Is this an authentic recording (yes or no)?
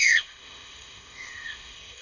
no